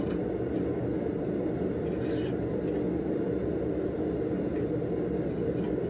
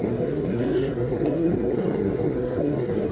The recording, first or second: first